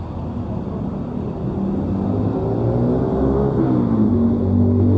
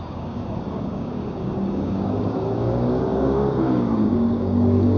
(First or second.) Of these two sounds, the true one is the first